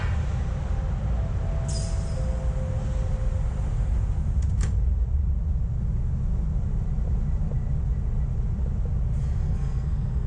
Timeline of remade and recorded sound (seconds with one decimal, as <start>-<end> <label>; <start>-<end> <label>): 0.0-9.4 recorded; 9.4-10.3 remade